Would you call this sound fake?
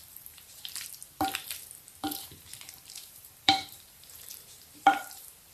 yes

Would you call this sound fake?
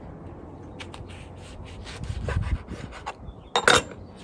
no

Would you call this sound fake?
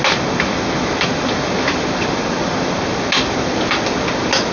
no